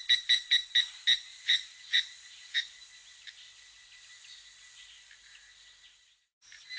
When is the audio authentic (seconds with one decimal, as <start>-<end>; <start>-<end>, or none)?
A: 0.0-1.3; 2.9-6.8